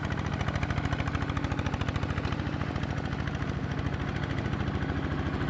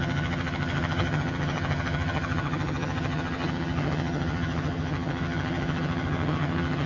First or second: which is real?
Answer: first